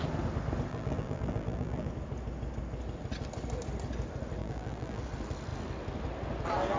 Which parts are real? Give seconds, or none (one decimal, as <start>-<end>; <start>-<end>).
0.0-0.7; 1.9-4.4; 5.0-6.8